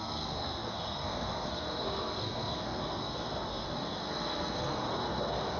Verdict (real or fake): fake